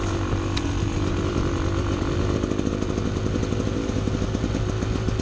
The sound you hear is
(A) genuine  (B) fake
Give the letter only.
A